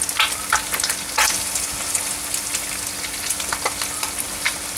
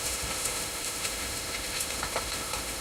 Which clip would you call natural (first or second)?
first